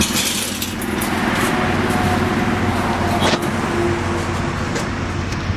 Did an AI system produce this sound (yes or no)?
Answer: no